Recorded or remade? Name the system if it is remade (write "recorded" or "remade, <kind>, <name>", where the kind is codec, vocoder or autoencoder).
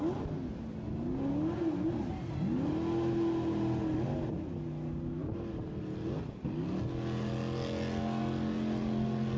recorded